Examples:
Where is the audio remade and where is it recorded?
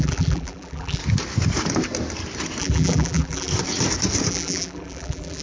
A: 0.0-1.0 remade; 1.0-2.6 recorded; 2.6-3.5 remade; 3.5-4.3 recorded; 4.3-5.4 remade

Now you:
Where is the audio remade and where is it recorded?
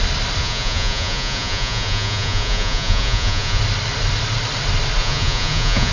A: 0.0-0.4 recorded; 0.4-3.6 remade; 3.6-5.0 recorded; 5.0-5.9 remade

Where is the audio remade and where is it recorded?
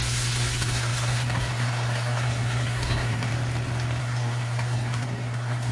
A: 0.0-3.3 remade; 3.3-4.0 recorded; 4.0-5.7 remade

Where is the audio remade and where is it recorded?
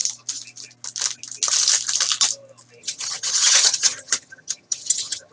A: 0.0-2.8 recorded; 2.8-5.3 remade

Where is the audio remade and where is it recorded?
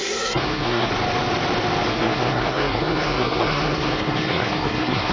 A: 0.0-0.9 remade; 0.9-1.9 recorded; 1.9-5.1 remade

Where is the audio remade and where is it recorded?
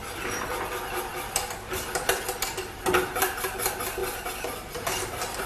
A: 0.0-0.5 remade; 0.5-1.1 recorded; 1.1-3.1 remade; 3.1-4.0 recorded; 4.0-5.5 remade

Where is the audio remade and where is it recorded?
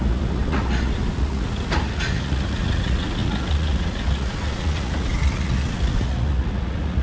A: 0.0-7.0 remade